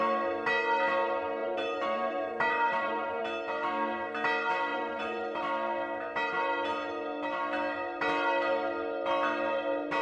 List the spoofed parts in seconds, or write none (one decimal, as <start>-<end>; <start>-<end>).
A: 1.4-3.2; 4.7-5.4